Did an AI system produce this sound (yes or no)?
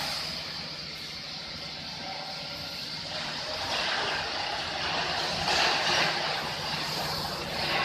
no